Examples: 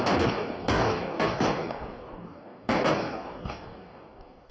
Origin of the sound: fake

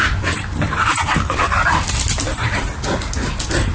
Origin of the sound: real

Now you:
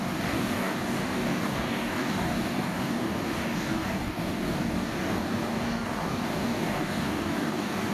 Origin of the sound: fake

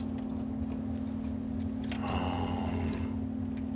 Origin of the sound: real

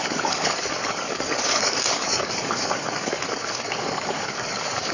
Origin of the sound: fake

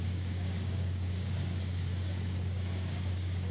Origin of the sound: fake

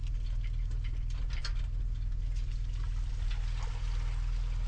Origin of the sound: real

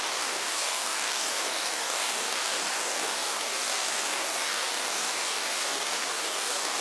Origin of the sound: fake